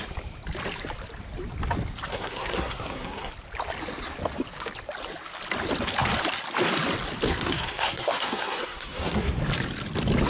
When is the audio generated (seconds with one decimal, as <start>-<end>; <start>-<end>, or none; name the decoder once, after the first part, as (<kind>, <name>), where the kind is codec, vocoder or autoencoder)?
2.1-3.3 (codec, SNAC); 7.3-9.4